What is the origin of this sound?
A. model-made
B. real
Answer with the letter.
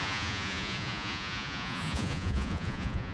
A